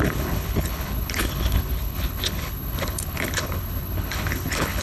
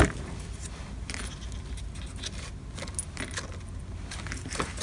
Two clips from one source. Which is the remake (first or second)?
first